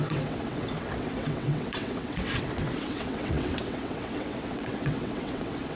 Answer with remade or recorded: remade